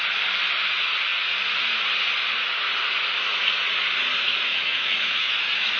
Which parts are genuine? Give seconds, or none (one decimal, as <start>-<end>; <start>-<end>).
0.0-4.5; 5.3-5.8